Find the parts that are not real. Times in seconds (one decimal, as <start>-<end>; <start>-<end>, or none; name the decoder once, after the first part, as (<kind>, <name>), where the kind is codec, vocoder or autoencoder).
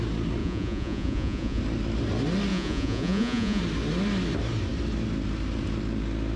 0.4-1.6 (vocoder, Vocos); 2.5-3.6